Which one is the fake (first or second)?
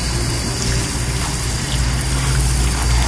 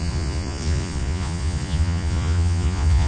second